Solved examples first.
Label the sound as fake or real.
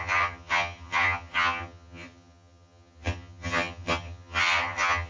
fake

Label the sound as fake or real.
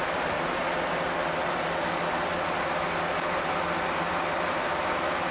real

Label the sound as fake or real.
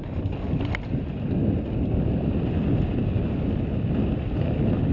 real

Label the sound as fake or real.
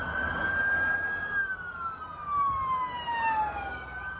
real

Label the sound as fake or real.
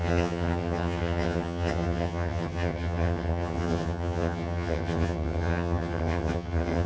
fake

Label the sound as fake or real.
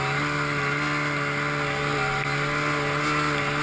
real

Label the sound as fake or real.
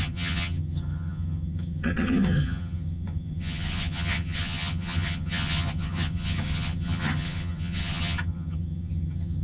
fake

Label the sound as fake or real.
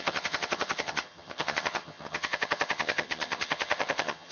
fake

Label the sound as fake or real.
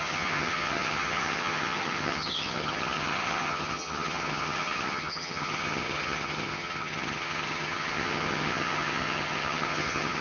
fake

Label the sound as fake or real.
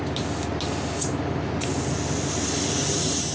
real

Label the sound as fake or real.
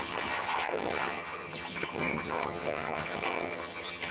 fake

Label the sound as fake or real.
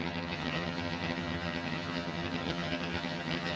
fake